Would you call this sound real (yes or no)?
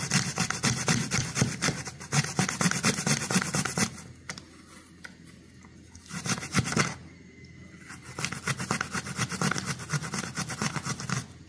yes